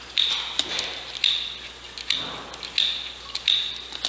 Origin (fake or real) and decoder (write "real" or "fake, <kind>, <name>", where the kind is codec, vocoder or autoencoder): real